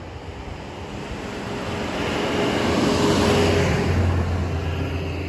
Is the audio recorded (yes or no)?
yes